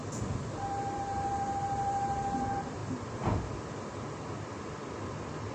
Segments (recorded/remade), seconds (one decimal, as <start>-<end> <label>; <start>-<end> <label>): 0.0-1.0 remade; 1.0-4.8 recorded; 4.8-5.5 remade